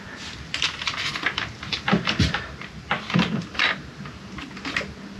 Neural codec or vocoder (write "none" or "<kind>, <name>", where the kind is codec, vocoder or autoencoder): none